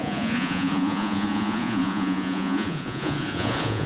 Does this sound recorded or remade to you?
remade